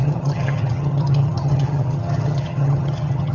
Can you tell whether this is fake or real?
fake